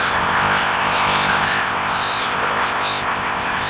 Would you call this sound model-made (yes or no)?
yes